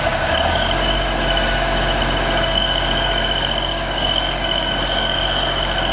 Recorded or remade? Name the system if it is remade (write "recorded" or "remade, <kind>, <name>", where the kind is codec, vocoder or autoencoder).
remade, codec, DAC